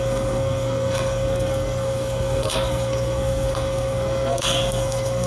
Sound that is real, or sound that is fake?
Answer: fake